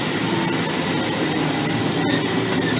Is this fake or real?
real